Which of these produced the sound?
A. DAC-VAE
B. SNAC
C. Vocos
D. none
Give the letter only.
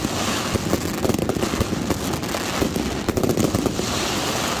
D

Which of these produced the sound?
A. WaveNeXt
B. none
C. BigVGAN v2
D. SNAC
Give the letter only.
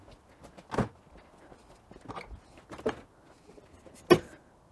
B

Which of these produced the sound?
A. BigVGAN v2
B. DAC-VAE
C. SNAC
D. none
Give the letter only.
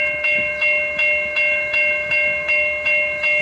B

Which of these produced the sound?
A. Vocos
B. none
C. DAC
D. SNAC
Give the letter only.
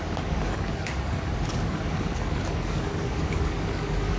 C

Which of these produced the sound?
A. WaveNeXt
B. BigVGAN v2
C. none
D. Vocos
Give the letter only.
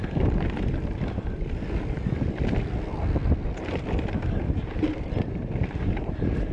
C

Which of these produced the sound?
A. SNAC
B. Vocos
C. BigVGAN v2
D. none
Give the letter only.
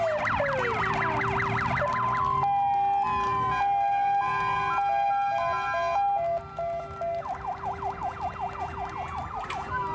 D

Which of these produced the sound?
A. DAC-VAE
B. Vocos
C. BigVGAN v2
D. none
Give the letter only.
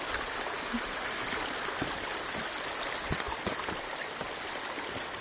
D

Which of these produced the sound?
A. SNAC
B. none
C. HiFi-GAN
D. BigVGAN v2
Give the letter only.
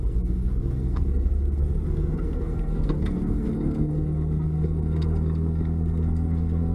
A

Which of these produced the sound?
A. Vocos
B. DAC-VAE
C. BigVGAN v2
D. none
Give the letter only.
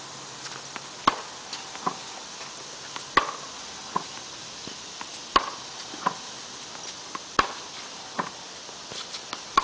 D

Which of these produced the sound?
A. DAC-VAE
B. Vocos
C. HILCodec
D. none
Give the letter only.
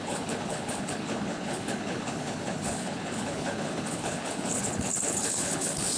C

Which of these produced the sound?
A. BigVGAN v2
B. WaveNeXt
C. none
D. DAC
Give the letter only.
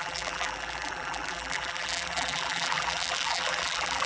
A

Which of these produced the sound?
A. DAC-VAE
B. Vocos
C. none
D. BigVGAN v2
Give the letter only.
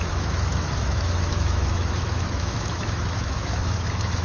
A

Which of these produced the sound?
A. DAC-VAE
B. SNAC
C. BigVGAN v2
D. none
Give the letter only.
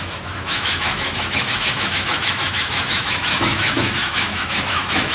A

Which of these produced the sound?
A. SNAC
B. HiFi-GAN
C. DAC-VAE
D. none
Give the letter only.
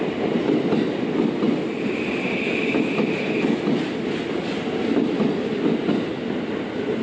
D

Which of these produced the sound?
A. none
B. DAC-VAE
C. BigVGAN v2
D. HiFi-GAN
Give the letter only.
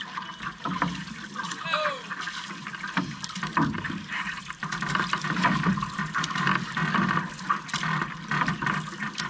A